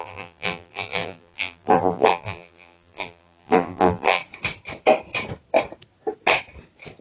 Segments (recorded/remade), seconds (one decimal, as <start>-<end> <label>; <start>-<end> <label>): 0.0-4.2 remade; 4.2-7.0 recorded